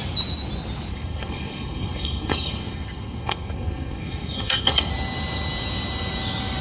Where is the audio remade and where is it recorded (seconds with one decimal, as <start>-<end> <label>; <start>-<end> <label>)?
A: 0.0-0.9 recorded; 0.9-4.9 remade; 4.9-6.6 recorded